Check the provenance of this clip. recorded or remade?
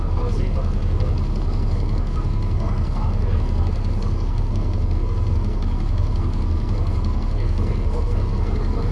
remade